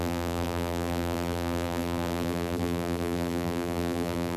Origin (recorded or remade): remade